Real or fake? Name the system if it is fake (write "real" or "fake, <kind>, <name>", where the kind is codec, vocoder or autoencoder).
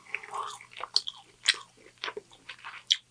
real